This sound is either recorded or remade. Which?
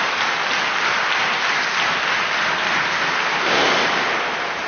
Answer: recorded